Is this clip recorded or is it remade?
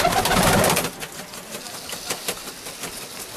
recorded